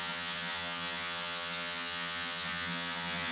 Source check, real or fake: fake